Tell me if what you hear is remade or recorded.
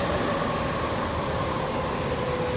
recorded